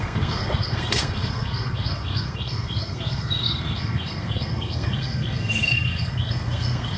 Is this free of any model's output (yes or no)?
no